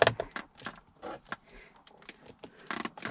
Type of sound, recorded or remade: recorded